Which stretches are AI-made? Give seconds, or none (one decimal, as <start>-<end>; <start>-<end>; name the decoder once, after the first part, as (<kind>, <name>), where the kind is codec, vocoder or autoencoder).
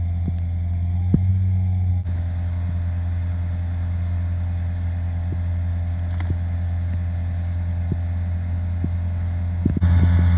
none